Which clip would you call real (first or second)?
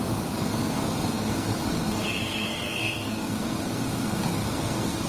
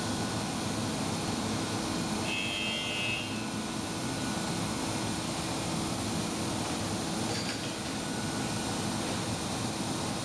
second